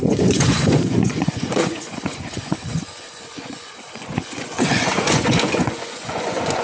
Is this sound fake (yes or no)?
yes